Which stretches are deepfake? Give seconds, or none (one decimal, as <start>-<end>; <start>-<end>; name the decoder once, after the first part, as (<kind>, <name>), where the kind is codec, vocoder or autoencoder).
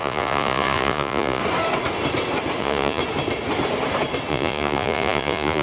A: 0.0-1.4 (vocoder, Vocos); 2.6-3.0; 4.3-5.6